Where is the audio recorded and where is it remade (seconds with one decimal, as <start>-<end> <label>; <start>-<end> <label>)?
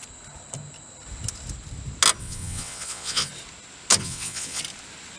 0.0-2.2 recorded; 2.2-3.3 remade; 3.3-4.0 recorded; 4.0-4.6 remade; 4.6-5.2 recorded